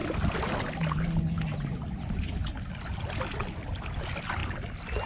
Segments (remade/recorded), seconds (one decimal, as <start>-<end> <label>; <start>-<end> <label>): 0.0-3.1 recorded; 3.1-4.4 remade; 4.4-5.1 recorded